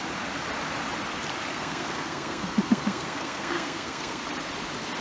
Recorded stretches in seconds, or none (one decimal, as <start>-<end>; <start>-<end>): 0.0-1.5; 4.2-5.0